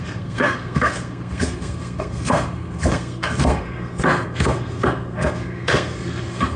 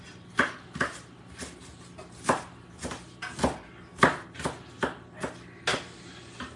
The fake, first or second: first